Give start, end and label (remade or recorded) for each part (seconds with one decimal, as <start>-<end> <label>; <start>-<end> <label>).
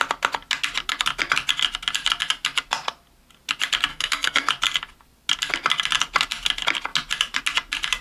0.0-3.9 recorded; 3.9-4.5 remade; 4.5-8.0 recorded